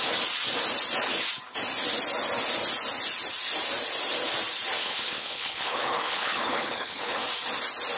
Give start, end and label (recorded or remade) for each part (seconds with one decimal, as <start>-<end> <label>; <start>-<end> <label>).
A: 0.0-4.8 recorded; 4.8-7.2 remade; 7.2-8.0 recorded